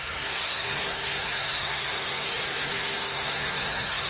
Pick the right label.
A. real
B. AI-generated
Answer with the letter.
B